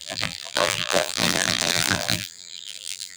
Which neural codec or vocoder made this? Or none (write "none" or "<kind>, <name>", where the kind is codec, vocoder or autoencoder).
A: vocoder, BigVGAN v2